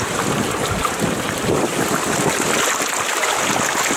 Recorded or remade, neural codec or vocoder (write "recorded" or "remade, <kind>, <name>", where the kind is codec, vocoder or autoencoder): recorded